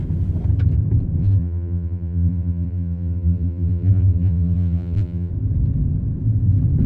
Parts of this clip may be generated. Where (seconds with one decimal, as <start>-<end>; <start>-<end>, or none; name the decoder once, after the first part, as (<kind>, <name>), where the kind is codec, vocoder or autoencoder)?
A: 1.2-5.3 (vocoder, BigVGAN v2)